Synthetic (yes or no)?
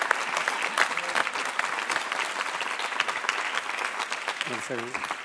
no